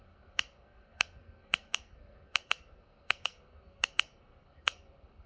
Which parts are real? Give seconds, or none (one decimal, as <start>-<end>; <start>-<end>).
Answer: none